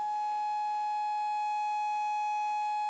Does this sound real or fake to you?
real